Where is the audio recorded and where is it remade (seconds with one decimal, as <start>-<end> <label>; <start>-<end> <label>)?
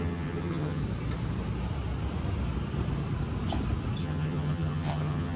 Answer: 0.0-0.8 remade; 0.8-4.0 recorded; 4.0-5.4 remade